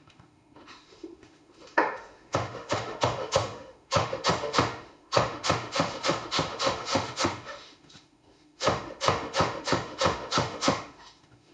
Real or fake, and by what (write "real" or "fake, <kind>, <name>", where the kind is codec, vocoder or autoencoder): fake, autoencoder, DAC-VAE